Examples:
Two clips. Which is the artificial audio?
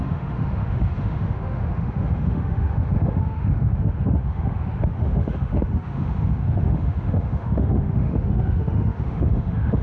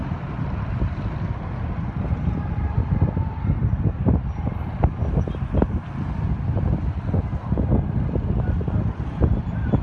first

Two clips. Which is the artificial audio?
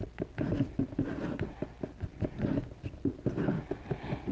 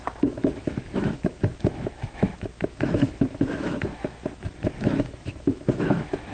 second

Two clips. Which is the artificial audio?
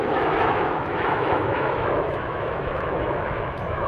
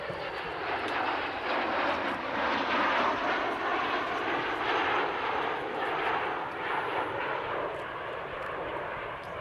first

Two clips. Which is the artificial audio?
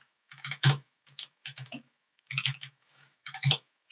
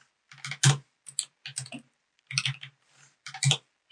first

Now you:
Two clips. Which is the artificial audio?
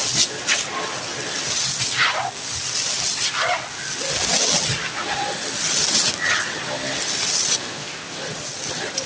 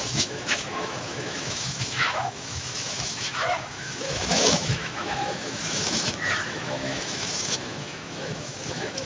second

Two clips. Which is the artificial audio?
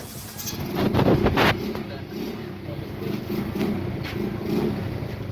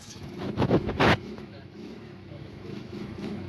second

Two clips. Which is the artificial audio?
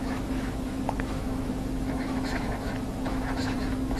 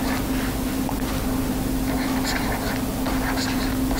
first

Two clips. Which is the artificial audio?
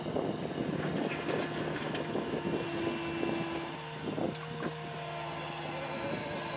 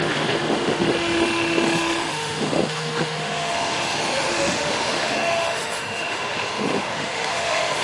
second